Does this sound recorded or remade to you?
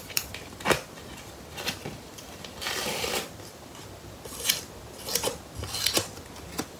remade